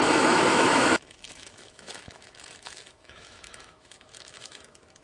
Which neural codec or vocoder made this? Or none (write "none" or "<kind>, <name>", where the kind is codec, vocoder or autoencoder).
autoencoder, DAC-VAE